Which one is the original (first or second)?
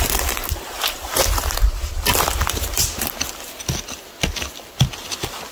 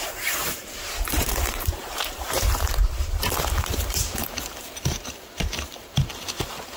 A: first